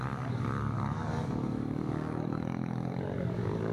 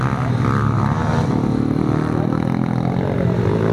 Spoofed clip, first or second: first